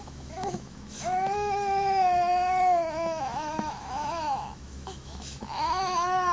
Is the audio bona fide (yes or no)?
no